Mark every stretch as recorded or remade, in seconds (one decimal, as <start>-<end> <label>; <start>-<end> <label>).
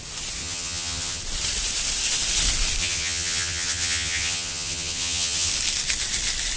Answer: 0.0-0.4 recorded; 0.4-1.2 remade; 1.2-2.8 recorded; 2.8-5.5 remade; 5.5-6.6 recorded